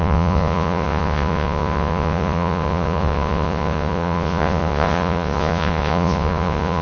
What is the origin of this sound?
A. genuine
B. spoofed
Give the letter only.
B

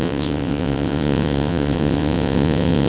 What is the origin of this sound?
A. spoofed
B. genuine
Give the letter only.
A